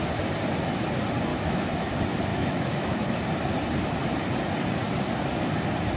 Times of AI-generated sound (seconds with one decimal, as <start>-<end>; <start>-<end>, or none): 1.3-1.9; 2.3-3.1